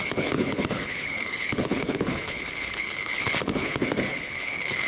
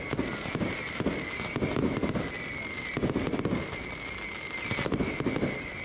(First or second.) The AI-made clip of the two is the first